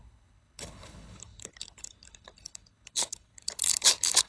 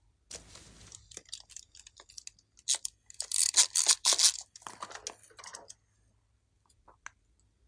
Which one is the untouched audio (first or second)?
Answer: second